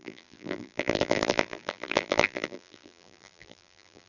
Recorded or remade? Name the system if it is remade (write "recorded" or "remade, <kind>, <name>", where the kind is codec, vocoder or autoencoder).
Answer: remade, vocoder, BigVGAN v2